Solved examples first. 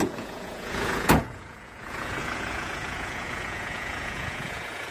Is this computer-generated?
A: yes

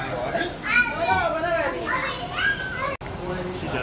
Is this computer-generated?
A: no